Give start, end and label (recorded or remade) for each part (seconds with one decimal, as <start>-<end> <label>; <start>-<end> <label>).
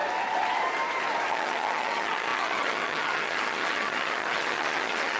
0.0-1.3 recorded; 1.3-5.2 remade